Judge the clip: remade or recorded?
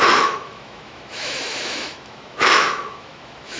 remade